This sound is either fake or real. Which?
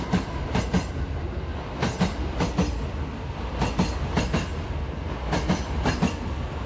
real